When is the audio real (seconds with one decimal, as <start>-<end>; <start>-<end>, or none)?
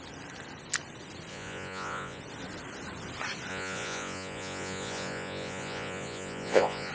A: 0.0-1.3; 2.2-3.5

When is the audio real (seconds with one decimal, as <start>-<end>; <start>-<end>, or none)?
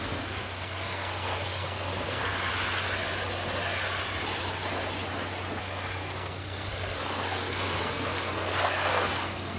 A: 2.5-5.6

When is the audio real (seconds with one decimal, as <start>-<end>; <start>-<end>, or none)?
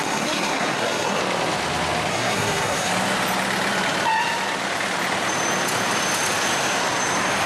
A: 1.2-2.1; 2.9-7.5